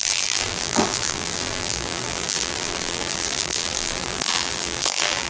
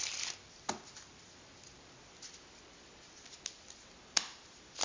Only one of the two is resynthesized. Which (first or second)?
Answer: first